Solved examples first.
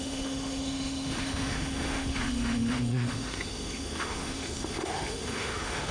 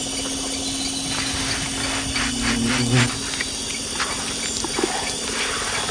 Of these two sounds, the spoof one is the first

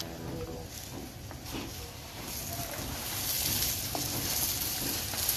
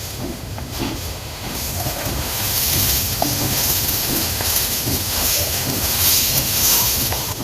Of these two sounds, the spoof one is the second